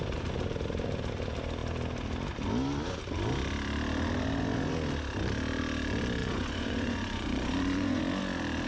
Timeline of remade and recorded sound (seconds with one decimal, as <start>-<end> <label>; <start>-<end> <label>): 0.0-6.2 recorded; 6.2-8.0 remade; 8.0-8.7 recorded